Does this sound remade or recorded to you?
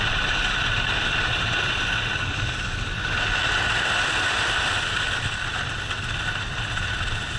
recorded